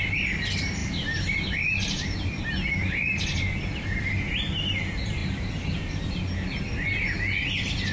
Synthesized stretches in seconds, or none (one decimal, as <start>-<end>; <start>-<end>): 0.8-2.4; 2.8-3.6; 5.2-6.2

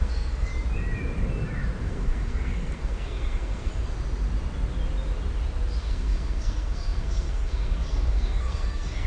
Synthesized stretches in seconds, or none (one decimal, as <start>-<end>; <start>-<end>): 0.0-0.5; 1.8-3.7; 5.8-9.1

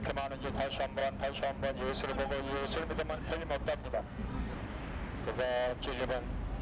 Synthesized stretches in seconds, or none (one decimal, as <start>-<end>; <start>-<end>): 3.8-4.5

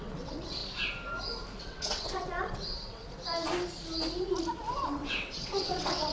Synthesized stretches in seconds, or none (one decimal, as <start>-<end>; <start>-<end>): 0.0-0.6; 1.6-3.0; 4.7-6.1

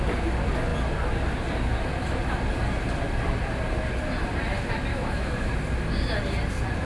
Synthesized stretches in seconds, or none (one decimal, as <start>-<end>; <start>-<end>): 4.9-5.5

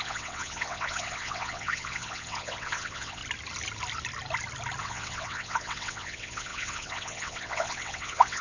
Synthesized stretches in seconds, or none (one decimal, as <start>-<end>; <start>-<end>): 0.0-3.2; 4.8-8.4

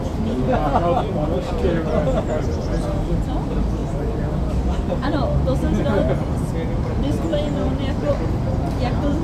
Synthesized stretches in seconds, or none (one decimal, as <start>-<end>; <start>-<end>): none

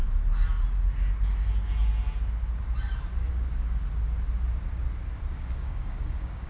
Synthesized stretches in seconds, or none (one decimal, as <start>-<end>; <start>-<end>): 3.3-3.8; 5.3-6.5